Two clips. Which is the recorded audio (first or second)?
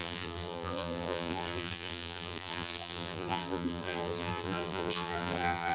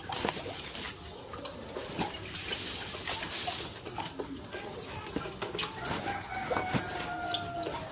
second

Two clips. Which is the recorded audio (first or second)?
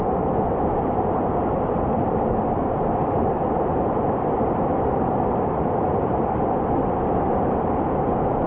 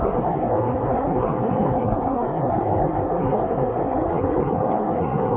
first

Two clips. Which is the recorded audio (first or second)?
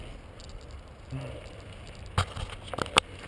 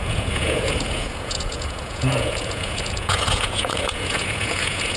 first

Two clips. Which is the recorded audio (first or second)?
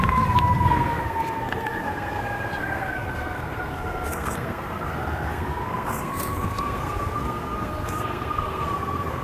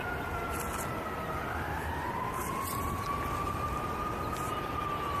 second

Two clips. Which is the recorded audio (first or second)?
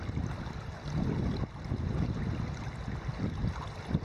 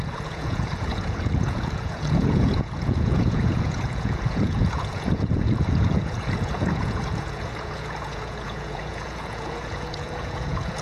first